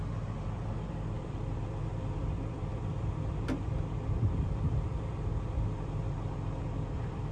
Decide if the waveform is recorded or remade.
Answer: remade